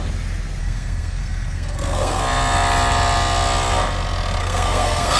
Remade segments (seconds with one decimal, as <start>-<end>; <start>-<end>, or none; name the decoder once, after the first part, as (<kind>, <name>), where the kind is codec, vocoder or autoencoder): 0.6-2.2 (codec, SNAC); 4.4-5.2

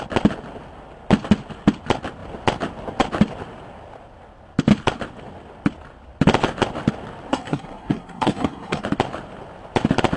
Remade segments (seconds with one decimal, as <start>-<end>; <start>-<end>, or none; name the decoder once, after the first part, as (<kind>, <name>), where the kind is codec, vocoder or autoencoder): 7.3-8.8 (codec, SNAC)

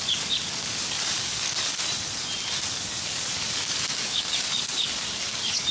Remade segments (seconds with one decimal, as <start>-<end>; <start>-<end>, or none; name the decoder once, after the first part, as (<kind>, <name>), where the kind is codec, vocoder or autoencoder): 0.0-1.7 (codec, DAC); 2.7-5.7

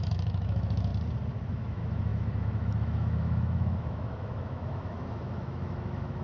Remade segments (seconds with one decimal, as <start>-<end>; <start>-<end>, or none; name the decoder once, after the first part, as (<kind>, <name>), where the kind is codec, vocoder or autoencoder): 0.0-0.9 (autoencoder, DAC-VAE); 1.5-6.2

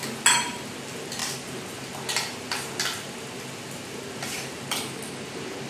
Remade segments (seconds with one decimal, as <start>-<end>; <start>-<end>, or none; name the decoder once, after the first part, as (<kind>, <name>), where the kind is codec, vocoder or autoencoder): none

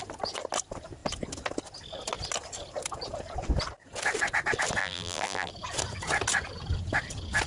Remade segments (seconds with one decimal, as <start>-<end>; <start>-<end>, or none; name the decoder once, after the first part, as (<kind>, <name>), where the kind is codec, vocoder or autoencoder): 4.8-5.5 (vocoder, BigVGAN v2)

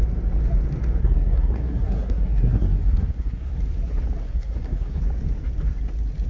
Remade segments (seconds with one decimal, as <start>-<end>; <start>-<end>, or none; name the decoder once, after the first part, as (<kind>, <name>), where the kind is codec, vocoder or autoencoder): 1.0-3.6 (codec, SNAC); 4.2-5.0

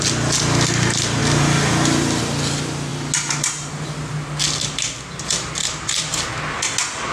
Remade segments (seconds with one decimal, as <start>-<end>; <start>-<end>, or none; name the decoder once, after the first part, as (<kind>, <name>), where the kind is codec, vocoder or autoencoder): 5.6-6.3 (vocoder, BigVGAN v2)